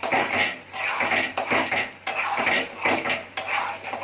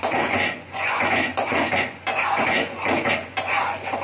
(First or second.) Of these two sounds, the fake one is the second